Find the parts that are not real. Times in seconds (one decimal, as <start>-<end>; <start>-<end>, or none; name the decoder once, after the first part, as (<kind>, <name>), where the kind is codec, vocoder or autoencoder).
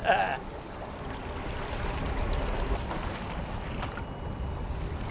none